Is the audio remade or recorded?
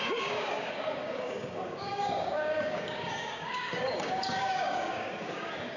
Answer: remade